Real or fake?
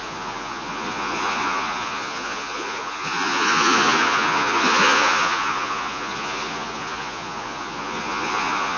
fake